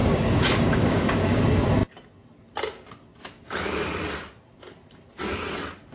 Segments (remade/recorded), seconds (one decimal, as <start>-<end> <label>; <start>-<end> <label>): 0.0-1.4 remade; 1.4-5.9 recorded